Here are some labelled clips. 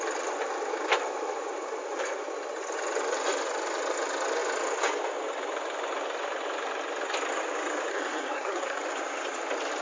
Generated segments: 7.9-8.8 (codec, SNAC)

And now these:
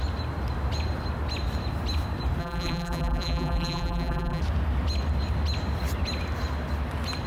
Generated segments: 2.4-4.4 (vocoder, BigVGAN v2)